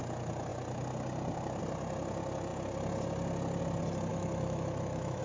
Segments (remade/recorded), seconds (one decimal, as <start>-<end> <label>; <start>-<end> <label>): 0.0-4.1 recorded; 4.1-5.2 remade